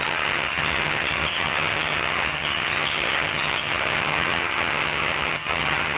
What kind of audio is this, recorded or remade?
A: remade